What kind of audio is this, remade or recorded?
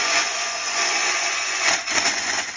remade